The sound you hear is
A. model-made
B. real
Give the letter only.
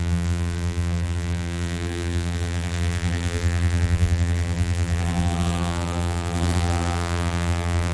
A